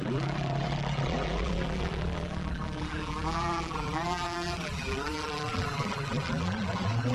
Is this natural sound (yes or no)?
no